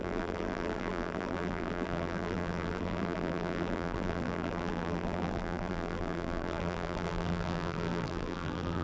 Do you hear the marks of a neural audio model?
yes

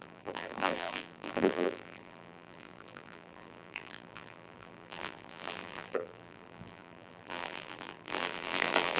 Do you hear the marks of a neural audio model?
yes